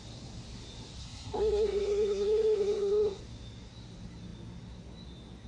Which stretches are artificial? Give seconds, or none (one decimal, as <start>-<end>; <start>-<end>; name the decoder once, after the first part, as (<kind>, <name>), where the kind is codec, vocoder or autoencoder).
1.0-3.2 (codec, SNAC)